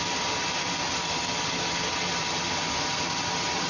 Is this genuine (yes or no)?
yes